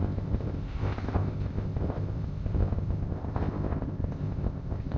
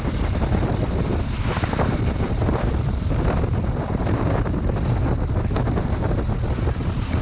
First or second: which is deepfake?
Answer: first